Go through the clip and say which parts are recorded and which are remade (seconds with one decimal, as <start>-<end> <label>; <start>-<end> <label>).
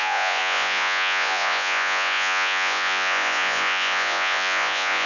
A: 0.0-5.1 remade